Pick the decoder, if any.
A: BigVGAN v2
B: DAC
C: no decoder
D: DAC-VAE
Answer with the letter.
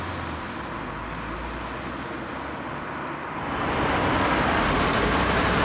C